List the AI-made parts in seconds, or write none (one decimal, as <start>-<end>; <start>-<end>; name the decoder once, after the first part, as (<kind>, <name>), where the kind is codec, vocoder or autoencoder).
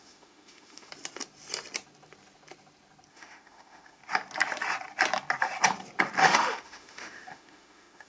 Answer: 0.0-0.9 (autoencoder, DAC-VAE); 3.1-4.0; 6.2-8.1